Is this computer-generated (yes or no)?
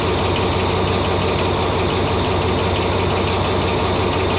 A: no